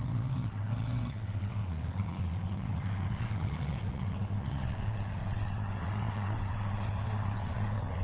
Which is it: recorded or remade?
remade